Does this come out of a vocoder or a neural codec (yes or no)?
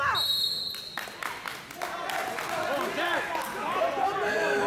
no